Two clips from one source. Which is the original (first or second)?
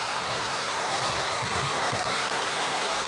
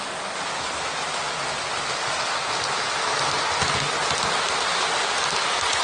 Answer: second